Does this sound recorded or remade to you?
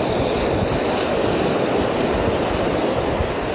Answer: recorded